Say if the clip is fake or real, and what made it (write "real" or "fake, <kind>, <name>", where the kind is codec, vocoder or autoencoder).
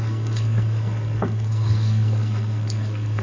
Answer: fake, codec, SNAC